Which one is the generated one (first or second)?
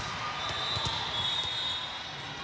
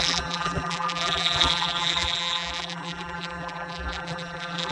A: second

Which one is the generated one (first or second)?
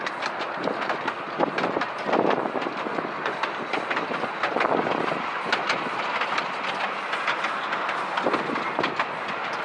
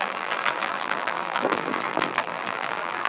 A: second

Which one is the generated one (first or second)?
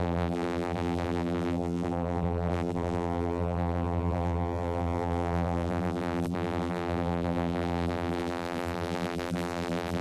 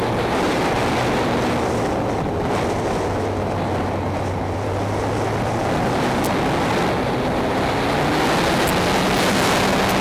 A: first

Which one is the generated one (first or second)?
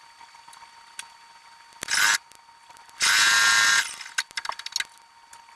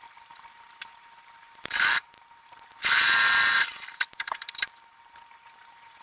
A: second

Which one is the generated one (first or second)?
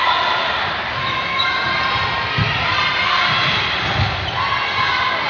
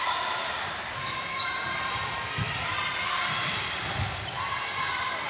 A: second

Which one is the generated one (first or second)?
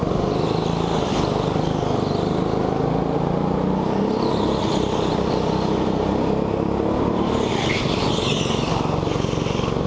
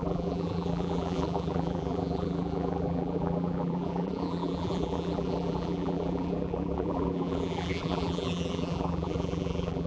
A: second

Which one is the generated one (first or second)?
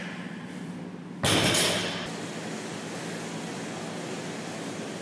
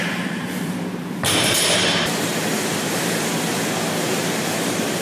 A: second